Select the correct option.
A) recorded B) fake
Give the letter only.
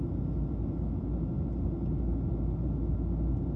A